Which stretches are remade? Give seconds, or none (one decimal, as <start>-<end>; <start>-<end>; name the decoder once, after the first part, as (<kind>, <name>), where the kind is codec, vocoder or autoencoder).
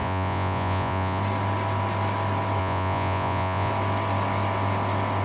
0.0-1.2 (vocoder, Vocos); 2.6-3.7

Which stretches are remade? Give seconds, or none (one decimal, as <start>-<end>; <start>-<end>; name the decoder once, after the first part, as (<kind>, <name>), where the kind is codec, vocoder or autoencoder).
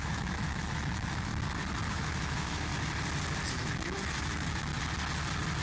0.0-1.3 (autoencoder, DAC-VAE); 1.9-2.7; 3.5-4.7